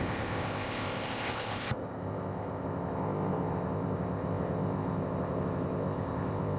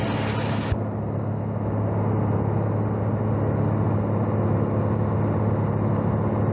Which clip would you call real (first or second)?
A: second